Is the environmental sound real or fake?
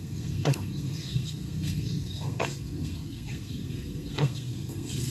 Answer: fake